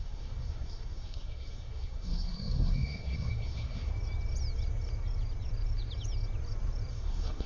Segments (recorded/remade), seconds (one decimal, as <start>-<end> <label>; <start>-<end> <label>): 0.0-3.9 remade; 3.9-6.9 recorded; 6.9-7.5 remade